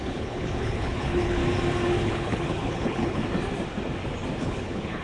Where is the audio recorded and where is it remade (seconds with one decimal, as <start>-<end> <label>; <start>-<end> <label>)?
0.0-1.4 remade; 1.4-2.0 recorded; 2.0-3.2 remade; 3.2-4.4 recorded; 4.4-5.0 remade